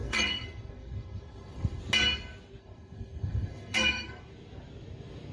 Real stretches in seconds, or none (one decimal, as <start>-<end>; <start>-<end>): 1.8-2.6; 4.2-5.3

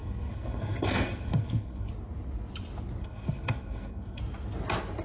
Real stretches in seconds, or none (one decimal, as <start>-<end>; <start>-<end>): 1.9-3.0; 4.2-5.0

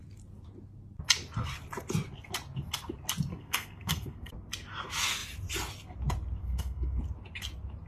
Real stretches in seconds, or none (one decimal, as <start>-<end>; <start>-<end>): 0.0-3.3; 4.3-6.4; 7.0-7.9

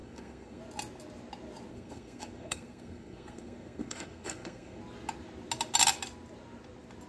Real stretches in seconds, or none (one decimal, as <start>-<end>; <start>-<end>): 0.6-1.7; 4.8-7.1

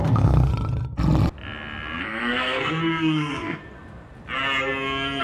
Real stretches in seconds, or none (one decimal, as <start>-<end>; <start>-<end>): 0.5-2.0; 3.6-5.2